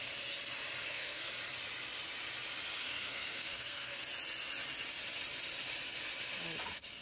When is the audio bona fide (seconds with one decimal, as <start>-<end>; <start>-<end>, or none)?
0.0-0.8; 1.3-2.8; 4.0-7.0